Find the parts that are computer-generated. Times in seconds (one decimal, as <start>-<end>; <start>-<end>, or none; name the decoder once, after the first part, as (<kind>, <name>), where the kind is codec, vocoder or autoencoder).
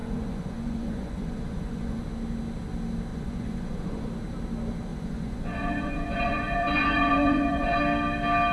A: 0.0-2.0 (vocoder, Vocos); 3.1-4.1; 4.9-7.8